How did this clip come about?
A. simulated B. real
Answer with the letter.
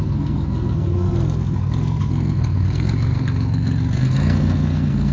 A